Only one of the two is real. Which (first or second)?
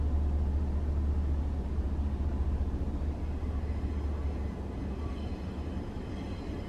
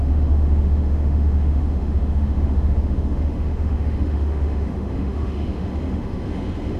first